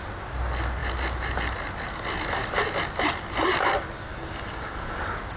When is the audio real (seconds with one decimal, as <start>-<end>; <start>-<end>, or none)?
0.0-4.1; 5.0-5.4